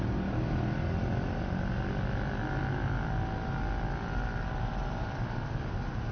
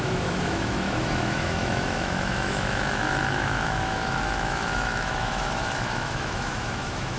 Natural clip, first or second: first